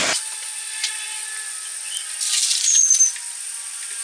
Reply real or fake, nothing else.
real